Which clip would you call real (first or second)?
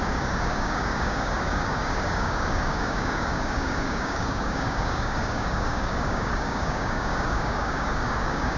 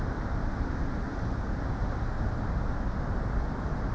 second